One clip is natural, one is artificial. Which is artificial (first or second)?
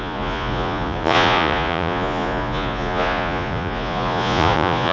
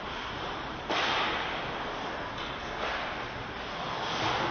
first